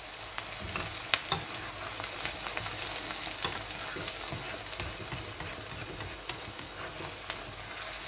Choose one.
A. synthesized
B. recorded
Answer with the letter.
B